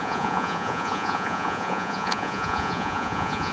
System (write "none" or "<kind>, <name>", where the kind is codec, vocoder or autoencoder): vocoder, Vocos